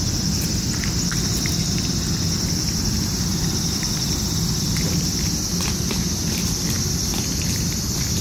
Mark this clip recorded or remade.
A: recorded